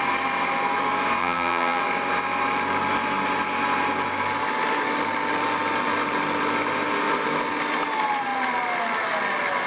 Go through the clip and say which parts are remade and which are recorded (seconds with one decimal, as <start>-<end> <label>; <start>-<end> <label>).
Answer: 0.0-1.2 recorded; 1.2-1.8 remade; 1.8-9.7 recorded